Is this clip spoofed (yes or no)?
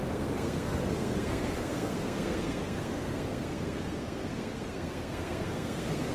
yes